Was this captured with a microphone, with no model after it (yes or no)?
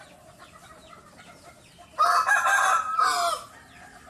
yes